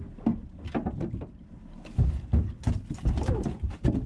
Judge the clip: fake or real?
real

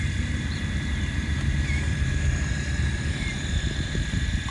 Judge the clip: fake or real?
fake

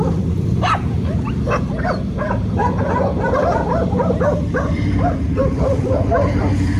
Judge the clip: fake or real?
fake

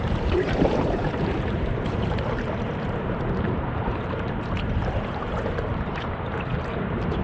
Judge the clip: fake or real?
fake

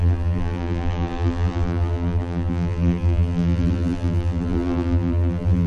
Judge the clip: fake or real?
fake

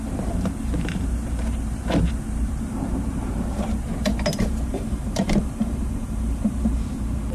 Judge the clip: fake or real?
fake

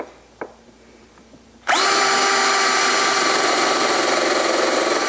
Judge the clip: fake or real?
fake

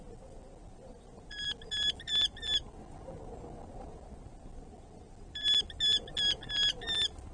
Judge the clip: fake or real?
real